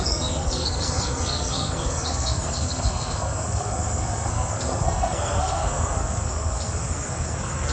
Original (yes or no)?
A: no